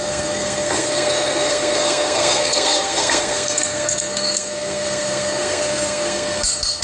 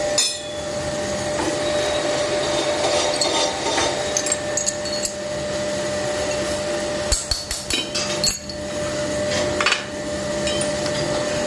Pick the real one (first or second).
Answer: second